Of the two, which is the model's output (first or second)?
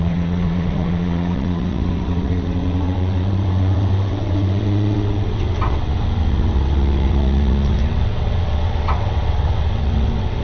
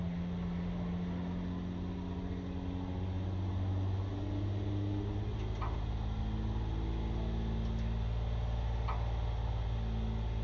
first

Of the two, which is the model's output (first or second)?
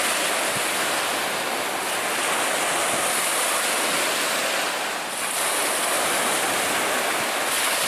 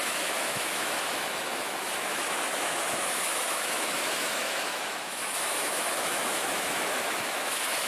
second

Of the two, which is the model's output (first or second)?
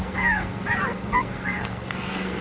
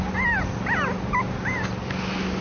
first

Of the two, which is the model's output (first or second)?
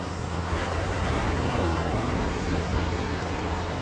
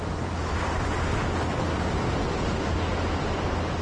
first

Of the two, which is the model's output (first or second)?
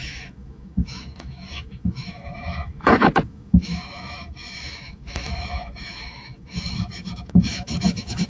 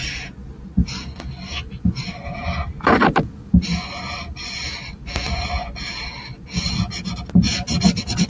first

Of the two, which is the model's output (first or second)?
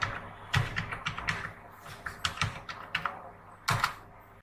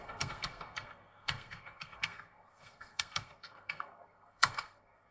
second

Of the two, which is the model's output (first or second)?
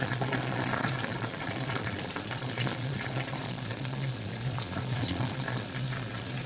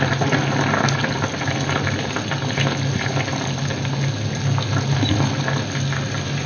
first